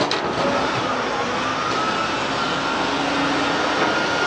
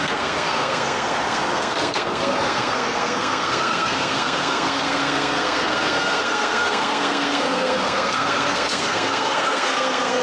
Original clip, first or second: first